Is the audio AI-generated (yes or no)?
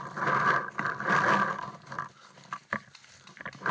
no